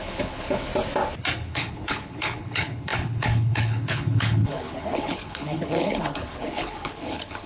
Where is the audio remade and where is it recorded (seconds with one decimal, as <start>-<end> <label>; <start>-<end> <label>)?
0.0-0.7 remade; 0.7-1.5 recorded; 1.5-7.5 remade